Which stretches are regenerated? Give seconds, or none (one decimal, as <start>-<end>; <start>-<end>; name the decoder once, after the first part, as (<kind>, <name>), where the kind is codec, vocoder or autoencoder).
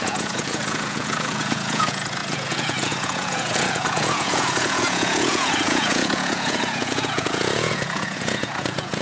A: 0.0-9.0 (vocoder, Vocos)